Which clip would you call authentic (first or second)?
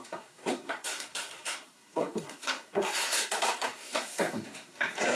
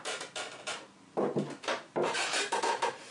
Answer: second